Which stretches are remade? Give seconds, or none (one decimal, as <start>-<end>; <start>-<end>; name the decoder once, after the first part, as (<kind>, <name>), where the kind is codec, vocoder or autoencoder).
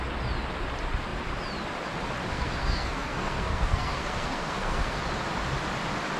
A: 2.3-5.0 (codec, SNAC)